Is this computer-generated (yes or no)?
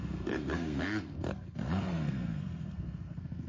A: yes